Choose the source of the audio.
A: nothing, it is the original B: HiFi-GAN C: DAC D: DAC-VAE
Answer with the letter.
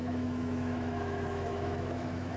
D